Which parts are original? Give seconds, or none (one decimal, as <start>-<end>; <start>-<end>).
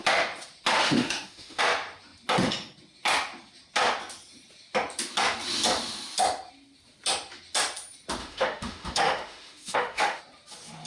0.0-0.8; 1.6-8.2; 10.2-10.9